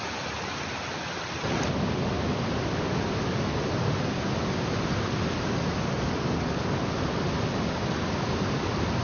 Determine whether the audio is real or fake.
real